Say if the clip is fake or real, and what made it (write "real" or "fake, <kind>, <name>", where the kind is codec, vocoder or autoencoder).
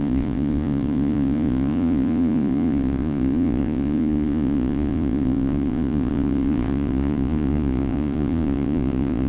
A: fake, vocoder, Vocos